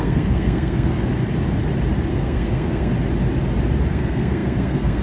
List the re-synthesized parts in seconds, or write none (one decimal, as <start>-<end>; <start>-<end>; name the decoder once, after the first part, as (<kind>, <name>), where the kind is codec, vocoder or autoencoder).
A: 0.0-1.1 (codec, SNAC); 2.1-2.9; 3.9-5.0